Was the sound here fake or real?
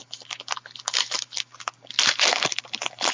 real